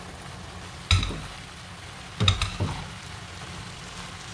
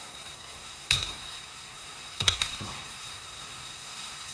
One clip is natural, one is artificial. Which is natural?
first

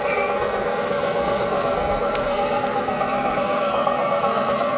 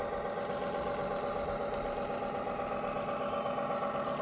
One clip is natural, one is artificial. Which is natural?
second